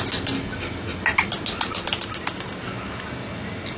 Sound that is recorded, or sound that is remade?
recorded